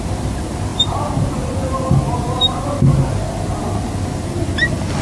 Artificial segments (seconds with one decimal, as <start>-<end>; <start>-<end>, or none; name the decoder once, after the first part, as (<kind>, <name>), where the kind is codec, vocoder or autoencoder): none